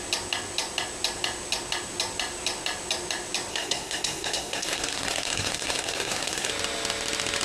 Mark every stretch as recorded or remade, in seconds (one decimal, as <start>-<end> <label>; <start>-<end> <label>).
0.0-3.5 recorded; 3.5-6.5 remade; 6.5-7.4 recorded